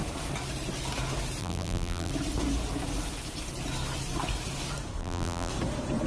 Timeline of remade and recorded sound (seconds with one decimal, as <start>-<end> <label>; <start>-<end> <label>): 0.0-1.4 recorded; 1.4-2.1 remade; 2.1-5.0 recorded; 5.0-5.5 remade; 5.5-6.1 recorded